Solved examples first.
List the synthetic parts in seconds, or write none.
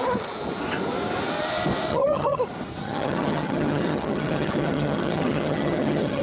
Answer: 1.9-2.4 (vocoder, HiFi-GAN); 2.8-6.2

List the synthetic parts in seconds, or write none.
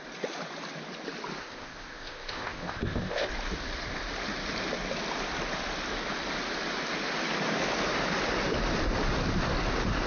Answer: 1.4-3.3 (codec, ZipCodec)